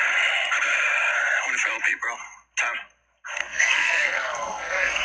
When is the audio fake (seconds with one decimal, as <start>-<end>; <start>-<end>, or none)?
3.4-5.0